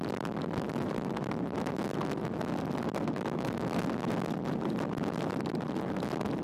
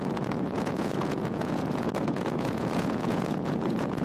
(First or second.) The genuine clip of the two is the first